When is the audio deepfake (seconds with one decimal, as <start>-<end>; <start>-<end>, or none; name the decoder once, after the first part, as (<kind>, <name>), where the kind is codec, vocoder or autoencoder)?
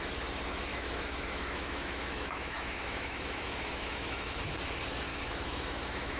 0.7-4.4 (autoencoder, DAC-VAE); 5.1-6.2